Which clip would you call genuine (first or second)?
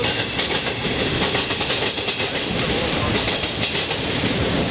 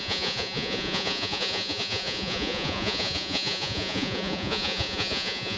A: first